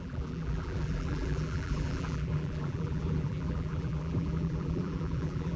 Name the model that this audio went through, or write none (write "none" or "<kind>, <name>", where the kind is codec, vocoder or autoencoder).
vocoder, BigVGAN v2